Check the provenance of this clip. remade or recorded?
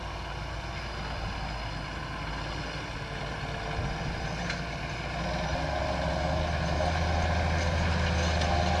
recorded